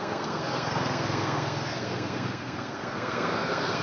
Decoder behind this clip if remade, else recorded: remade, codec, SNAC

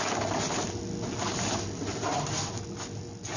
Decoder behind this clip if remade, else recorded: recorded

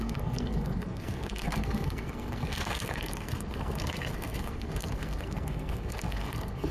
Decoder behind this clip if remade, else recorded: remade, codec, SNAC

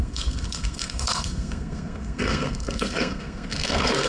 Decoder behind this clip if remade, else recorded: remade, codec, SNAC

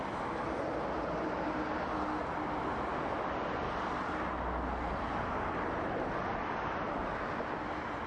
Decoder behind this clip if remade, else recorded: recorded